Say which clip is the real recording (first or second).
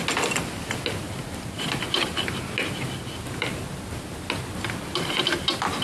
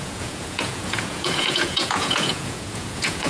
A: first